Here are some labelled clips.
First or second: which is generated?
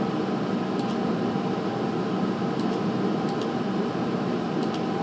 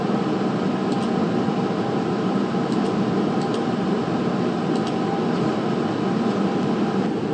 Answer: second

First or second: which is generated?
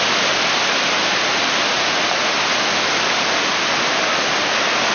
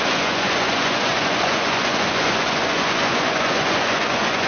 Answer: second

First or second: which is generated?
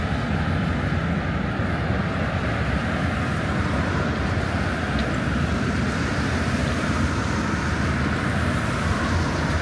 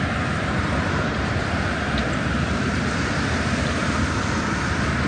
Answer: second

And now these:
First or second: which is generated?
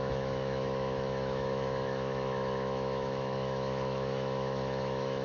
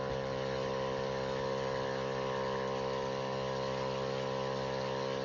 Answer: first